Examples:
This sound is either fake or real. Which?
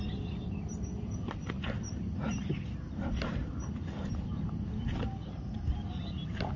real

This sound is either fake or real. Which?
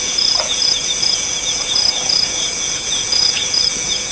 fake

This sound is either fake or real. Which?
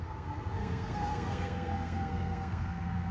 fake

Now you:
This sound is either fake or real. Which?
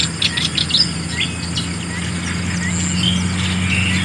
real